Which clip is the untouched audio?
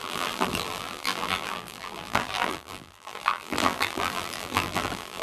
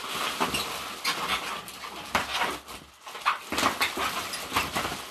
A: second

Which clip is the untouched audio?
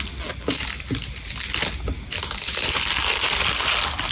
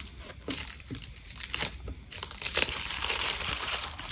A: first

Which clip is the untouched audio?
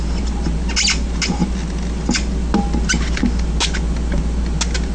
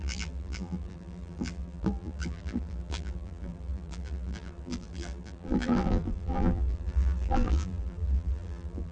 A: first